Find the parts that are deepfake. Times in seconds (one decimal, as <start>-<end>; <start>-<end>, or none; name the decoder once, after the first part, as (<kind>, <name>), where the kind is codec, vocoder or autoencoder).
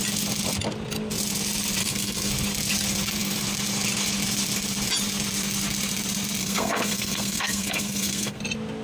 1.8-2.3 (codec, SNAC); 6.4-8.4